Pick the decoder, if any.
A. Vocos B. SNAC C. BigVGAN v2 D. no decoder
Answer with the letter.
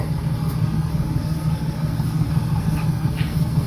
B